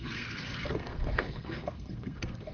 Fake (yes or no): yes